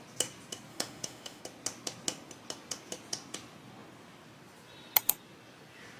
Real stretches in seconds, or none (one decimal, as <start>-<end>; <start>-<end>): 0.0-0.7; 1.4-6.0